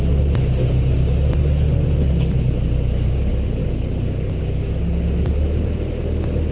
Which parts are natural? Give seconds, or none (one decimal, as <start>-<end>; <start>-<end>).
0.0-6.5